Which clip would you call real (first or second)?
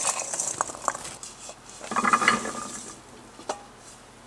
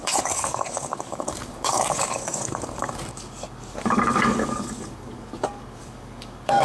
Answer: first